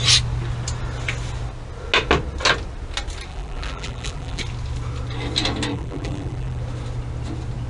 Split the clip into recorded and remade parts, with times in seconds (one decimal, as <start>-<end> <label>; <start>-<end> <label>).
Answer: 0.0-3.3 recorded; 3.3-4.4 remade; 4.4-5.7 recorded; 5.7-6.6 remade; 6.6-7.7 recorded